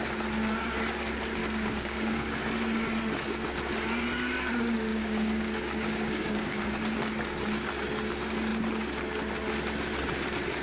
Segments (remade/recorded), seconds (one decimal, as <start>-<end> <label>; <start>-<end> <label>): 0.0-1.4 recorded; 1.4-2.4 remade; 2.4-4.9 recorded; 4.9-6.8 remade; 6.8-10.6 recorded